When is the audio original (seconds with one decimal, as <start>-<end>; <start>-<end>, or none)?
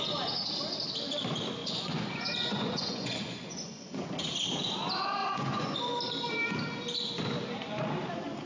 0.0-1.6; 4.1-5.2; 5.8-8.5